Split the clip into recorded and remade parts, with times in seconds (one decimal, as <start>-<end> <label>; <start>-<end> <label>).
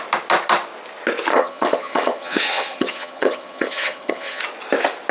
0.0-1.3 recorded; 1.3-4.4 remade; 4.4-5.1 recorded